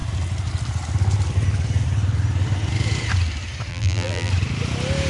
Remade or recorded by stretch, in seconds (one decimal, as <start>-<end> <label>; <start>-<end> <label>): 0.0-3.7 recorded; 3.7-4.3 remade; 4.3-5.1 recorded